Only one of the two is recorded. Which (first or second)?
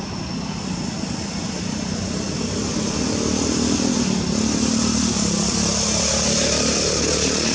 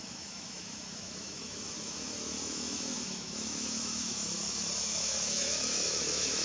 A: first